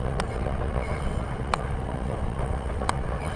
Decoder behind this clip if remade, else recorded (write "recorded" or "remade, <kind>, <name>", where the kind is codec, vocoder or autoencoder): remade, vocoder, WaveNeXt